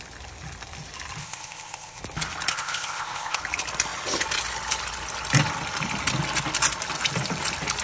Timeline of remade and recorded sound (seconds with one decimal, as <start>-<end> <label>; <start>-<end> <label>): 0.0-1.2 recorded; 1.2-2.0 remade; 2.0-2.5 recorded; 2.5-3.4 remade; 3.4-7.8 recorded